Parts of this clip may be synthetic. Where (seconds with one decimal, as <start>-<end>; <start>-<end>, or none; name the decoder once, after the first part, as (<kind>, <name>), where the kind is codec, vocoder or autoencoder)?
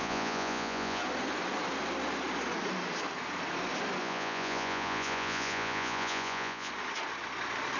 0.0-1.0 (vocoder, Vocos); 4.0-6.7